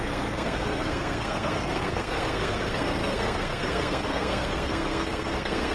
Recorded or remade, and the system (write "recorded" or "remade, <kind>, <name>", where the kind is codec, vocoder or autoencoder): remade, codec, SNAC